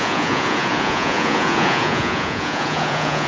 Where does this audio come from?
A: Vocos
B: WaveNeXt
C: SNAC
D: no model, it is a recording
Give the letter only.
A